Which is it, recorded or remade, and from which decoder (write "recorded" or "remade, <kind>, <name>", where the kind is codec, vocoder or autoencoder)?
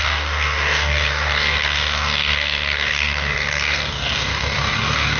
remade, codec, DAC